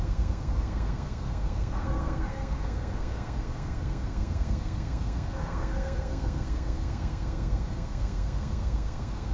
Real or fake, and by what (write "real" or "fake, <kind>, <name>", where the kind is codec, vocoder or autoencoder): fake, codec, SNAC